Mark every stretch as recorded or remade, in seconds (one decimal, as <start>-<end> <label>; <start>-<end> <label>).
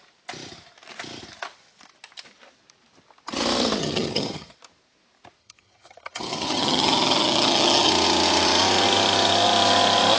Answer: 0.0-3.8 recorded; 3.8-4.5 remade; 4.5-5.4 recorded; 5.4-7.9 remade; 7.9-10.2 recorded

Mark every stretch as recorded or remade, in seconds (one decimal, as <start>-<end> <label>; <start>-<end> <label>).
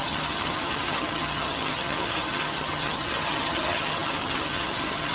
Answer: 0.0-5.1 remade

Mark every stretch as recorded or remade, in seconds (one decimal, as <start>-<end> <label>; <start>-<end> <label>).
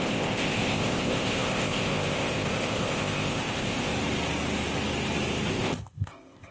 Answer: 0.0-3.9 remade; 3.9-5.5 recorded; 5.5-6.5 remade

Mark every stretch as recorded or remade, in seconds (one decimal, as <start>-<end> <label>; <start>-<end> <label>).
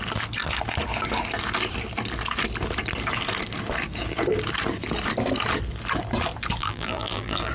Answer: 0.0-6.6 recorded; 6.6-7.5 remade